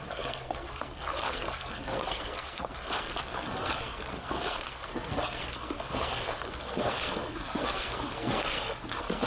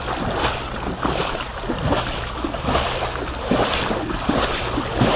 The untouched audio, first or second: second